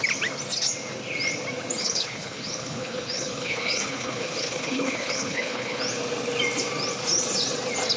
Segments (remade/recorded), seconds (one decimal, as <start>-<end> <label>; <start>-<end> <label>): 0.0-1.8 recorded; 1.8-5.8 remade; 5.8-8.0 recorded